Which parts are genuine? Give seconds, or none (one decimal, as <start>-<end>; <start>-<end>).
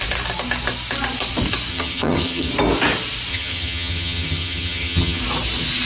0.0-1.7; 2.5-3.3; 5.2-5.9